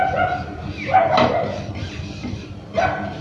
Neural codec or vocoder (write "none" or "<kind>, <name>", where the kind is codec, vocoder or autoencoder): none